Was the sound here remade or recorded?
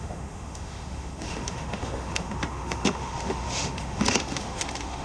remade